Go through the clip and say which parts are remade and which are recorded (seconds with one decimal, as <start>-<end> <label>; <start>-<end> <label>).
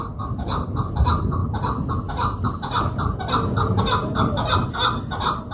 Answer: 0.0-5.5 recorded